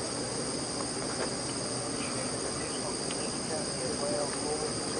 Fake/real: real